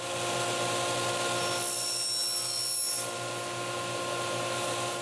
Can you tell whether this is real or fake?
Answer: real